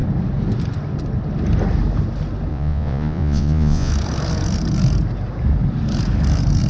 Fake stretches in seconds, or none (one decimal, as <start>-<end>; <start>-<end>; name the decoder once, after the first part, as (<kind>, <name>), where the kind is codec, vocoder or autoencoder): 2.5-3.9 (vocoder, Vocos)